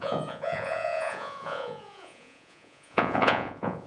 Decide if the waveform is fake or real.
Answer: fake